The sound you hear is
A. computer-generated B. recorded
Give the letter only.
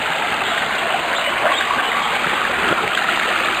B